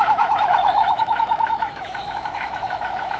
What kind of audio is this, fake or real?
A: fake